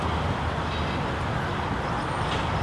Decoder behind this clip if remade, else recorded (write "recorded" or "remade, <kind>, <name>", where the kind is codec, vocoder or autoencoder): recorded